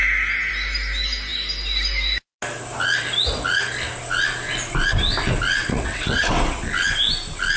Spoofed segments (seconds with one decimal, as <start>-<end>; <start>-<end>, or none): 5.6-6.3